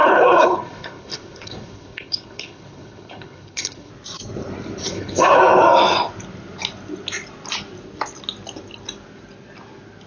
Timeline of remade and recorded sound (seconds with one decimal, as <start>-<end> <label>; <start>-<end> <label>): 0.0-3.9 remade; 3.9-4.8 recorded; 4.8-5.4 remade; 5.4-10.1 recorded